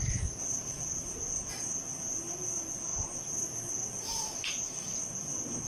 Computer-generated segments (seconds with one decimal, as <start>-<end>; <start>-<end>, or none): none